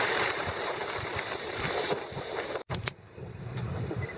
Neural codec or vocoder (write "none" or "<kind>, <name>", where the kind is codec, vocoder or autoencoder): vocoder, BigVGAN v2